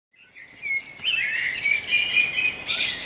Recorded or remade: recorded